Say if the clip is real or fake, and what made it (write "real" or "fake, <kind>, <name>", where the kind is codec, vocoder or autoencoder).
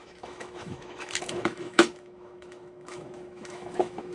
fake, autoencoder, DAC-VAE